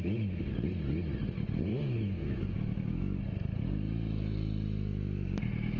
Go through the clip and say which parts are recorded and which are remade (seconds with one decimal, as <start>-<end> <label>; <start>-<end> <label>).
0.0-1.7 recorded; 1.7-3.2 remade; 3.2-5.8 recorded